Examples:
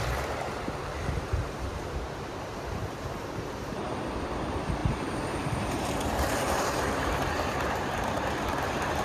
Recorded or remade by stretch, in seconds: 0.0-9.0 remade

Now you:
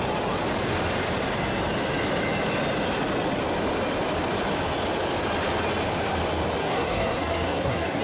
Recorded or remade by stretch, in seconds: 0.0-6.6 recorded; 6.6-8.0 remade

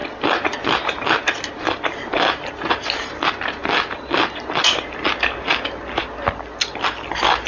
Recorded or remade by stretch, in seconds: 0.0-7.5 recorded